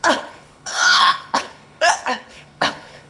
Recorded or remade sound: remade